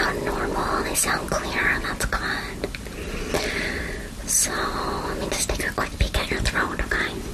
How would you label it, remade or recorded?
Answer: recorded